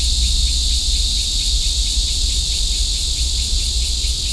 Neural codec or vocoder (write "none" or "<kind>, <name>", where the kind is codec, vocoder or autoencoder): none